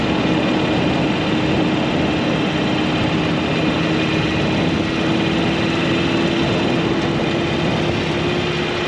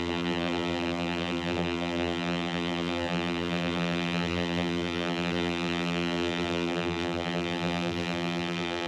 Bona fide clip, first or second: first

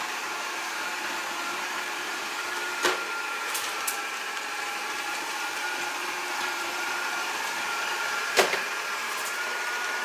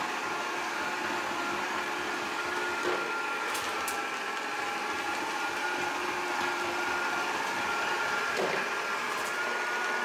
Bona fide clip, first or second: second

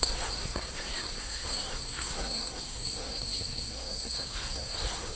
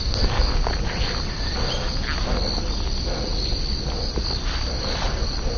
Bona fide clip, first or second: second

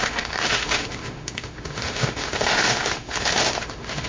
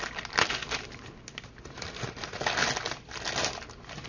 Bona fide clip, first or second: second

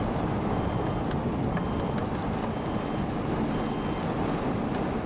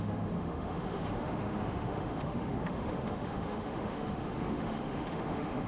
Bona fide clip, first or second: first